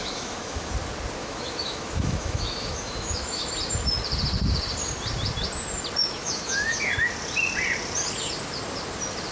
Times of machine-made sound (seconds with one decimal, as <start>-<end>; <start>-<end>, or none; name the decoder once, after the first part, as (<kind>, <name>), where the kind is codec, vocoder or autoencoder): 0.0-0.7 (autoencoder, DAC-VAE); 1.2-3.5; 6.0-6.9